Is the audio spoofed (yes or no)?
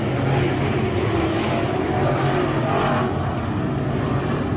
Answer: no